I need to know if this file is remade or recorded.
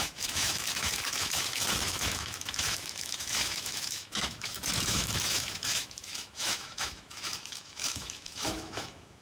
remade